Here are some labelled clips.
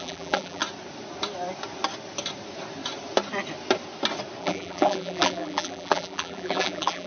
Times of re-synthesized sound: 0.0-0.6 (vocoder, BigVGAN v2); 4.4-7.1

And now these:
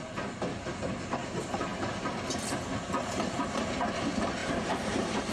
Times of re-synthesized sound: 4.4-5.3 (vocoder, BigVGAN v2)

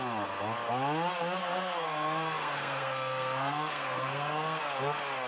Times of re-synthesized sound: 1.4-4.6 (codec, SNAC)

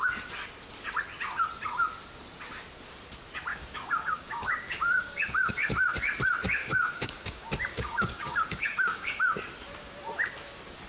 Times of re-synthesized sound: 3.5-5.5 (codec, DAC); 6.6-9.2

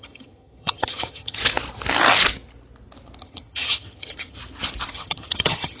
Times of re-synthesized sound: 0.0-1.4 (vocoder, HiFi-GAN); 3.2-4.4; 4.9-5.8

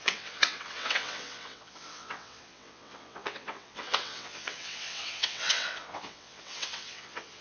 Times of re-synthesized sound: 0.0-7.4 (vocoder, WaveNeXt)

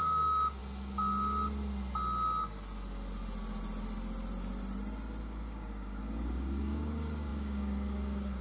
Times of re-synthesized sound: 0.0-0.6 (codec, DAC); 5.2-8.4

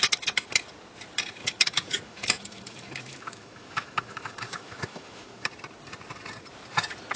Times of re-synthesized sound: 1.4-5.5 (autoencoder, DAC-VAE)